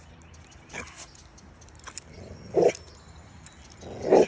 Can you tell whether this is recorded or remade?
recorded